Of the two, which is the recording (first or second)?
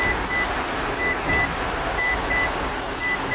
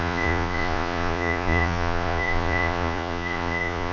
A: first